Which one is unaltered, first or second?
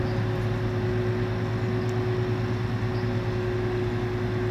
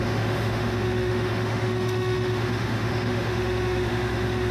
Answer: first